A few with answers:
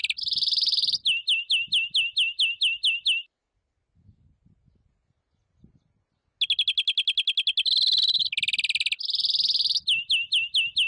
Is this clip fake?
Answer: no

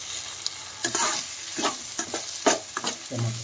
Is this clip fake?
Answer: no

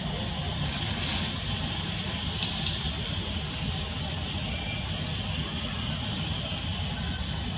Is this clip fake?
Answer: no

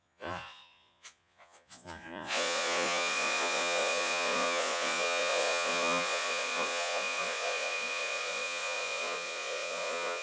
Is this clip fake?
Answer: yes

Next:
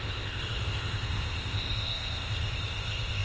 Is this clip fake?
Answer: yes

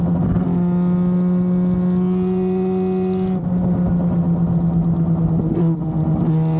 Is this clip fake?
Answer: no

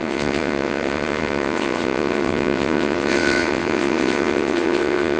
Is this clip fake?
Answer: yes